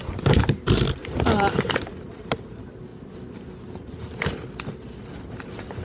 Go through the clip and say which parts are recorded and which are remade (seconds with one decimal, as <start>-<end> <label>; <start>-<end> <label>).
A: 0.0-1.0 recorded; 1.0-2.2 remade; 2.2-5.8 recorded